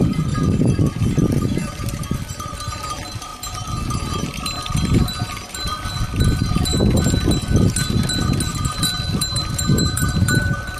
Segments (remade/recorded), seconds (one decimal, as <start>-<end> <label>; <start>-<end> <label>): 0.0-3.3 remade; 3.3-4.1 recorded; 4.1-6.7 remade; 6.7-8.8 recorded; 8.8-10.8 remade